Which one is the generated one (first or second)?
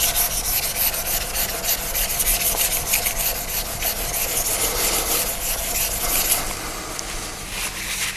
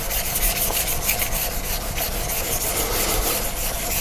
second